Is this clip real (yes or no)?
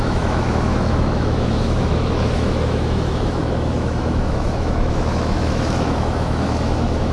no